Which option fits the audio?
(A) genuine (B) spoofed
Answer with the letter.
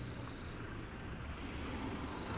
A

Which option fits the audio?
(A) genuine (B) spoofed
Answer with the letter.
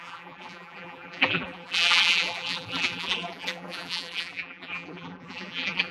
B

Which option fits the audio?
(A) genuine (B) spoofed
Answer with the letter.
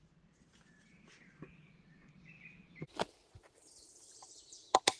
B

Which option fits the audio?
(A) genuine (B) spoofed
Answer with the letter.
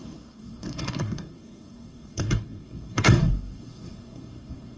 B